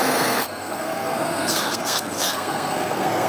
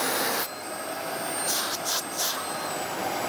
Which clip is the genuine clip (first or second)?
second